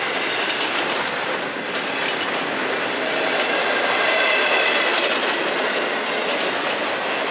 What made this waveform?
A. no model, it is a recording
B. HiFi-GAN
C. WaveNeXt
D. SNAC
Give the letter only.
A